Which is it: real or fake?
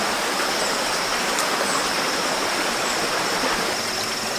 real